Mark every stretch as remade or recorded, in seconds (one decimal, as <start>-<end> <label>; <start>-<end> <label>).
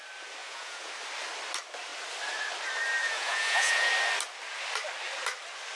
0.0-0.4 recorded; 0.4-0.9 remade; 0.9-3.0 recorded; 3.0-3.9 remade; 3.9-5.7 recorded